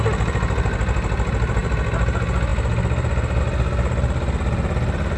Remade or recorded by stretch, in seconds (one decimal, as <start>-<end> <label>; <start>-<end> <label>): 0.0-5.2 recorded